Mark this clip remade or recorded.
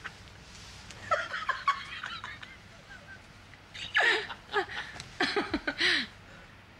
recorded